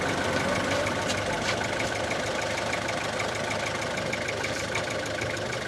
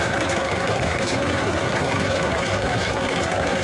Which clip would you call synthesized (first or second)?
second